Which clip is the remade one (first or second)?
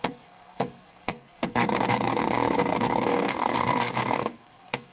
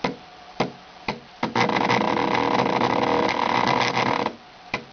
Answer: first